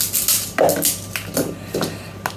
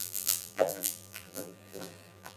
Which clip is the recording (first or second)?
first